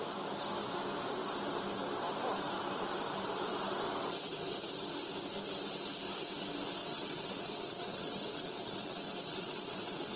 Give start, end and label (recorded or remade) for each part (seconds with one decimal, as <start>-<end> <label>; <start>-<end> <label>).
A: 0.0-6.8 recorded; 6.8-10.2 remade